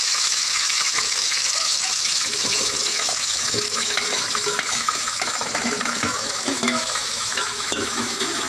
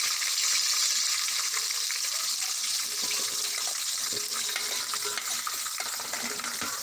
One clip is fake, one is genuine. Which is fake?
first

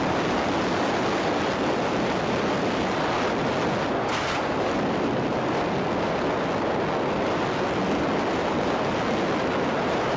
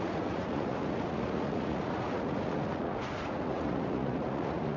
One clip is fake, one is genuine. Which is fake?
second